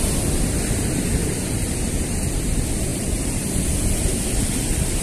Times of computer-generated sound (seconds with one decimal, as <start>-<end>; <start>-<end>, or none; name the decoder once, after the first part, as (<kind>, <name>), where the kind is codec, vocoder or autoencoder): 1.2-1.8 (vocoder, BigVGAN v2); 2.9-3.5